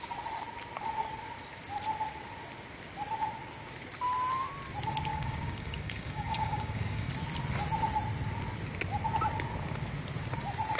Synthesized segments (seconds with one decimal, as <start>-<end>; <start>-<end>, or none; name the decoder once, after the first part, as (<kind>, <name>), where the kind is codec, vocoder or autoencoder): 5.1-7.1 (codec, DAC)